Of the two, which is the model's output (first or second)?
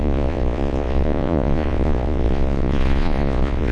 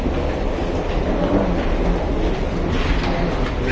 first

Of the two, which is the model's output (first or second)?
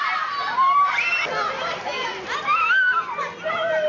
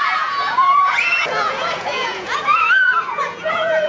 second